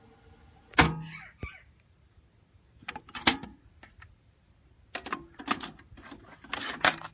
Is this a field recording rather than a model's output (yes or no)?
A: yes